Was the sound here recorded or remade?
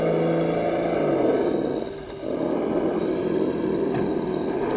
recorded